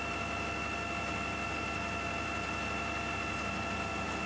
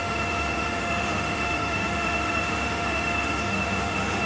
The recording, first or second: first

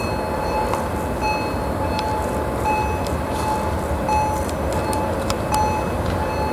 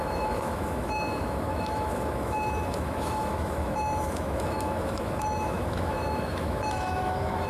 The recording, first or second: first